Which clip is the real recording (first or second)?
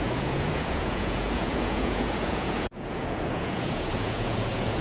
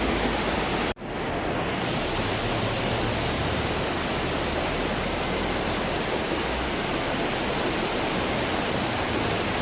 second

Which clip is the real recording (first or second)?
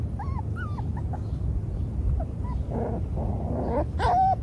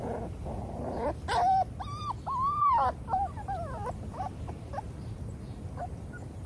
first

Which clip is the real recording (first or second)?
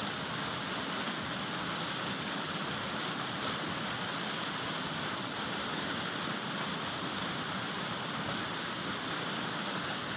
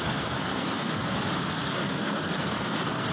first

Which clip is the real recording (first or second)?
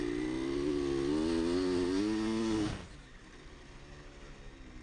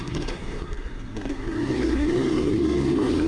first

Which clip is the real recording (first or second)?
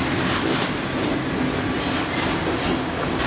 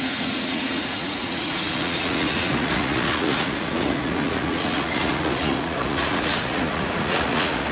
first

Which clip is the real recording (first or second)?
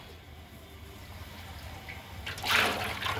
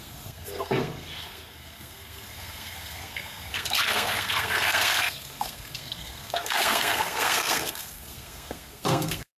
first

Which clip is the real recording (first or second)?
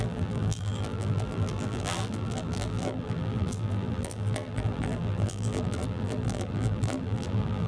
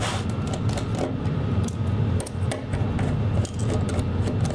second